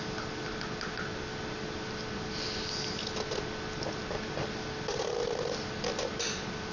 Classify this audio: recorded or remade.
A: recorded